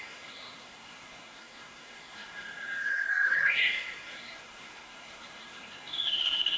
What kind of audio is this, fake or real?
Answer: fake